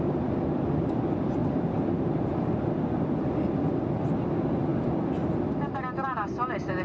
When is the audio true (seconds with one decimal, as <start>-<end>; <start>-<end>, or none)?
0.0-4.7; 5.3-6.8